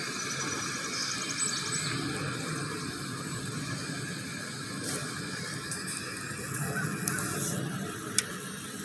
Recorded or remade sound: recorded